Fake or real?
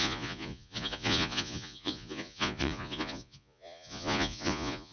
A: fake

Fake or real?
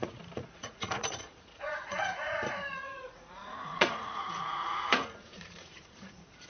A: fake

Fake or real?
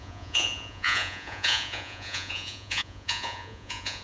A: fake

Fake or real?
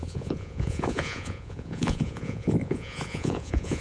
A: fake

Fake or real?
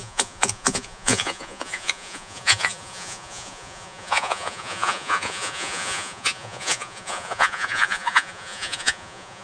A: fake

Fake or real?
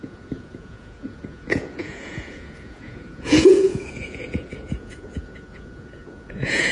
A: fake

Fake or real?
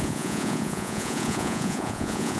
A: fake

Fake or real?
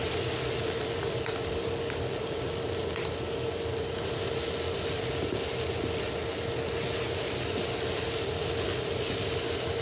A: real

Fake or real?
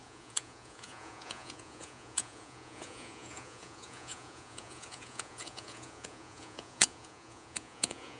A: fake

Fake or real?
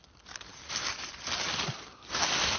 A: real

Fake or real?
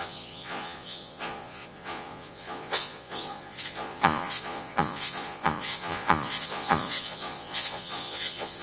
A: fake